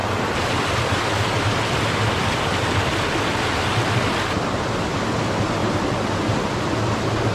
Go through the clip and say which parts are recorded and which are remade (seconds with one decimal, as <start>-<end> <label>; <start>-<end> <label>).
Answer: 0.0-7.3 recorded